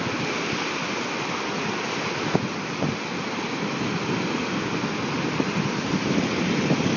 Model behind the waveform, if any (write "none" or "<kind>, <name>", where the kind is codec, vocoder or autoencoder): none